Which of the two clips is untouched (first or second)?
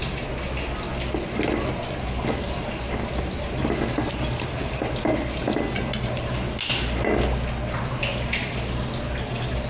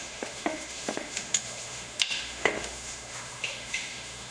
first